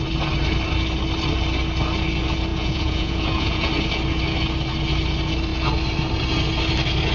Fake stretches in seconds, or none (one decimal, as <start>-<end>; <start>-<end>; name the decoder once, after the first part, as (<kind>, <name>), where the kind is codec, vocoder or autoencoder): 2.5-3.7 (vocoder, Vocos)